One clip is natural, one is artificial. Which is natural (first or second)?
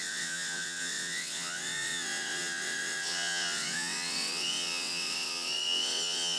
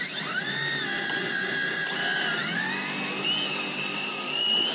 second